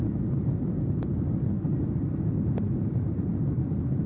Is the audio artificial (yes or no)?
no